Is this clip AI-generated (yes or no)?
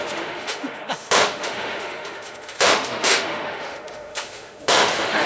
yes